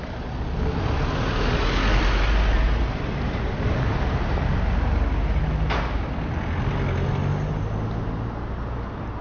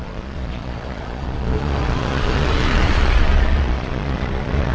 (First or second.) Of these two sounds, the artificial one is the second